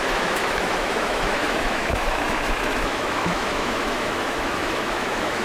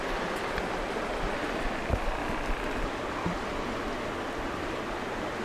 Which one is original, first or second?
second